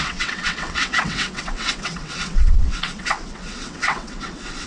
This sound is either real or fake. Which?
fake